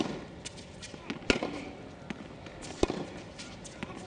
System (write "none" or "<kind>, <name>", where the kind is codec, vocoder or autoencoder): none